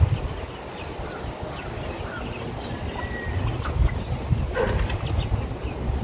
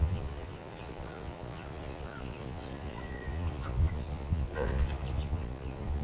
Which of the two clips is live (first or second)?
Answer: first